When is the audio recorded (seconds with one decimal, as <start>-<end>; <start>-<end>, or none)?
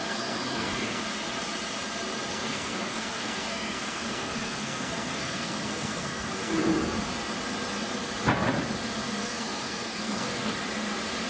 1.0-2.3; 6.6-9.2; 10.5-11.3